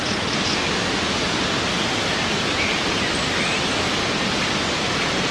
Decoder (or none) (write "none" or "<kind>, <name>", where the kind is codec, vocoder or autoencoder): none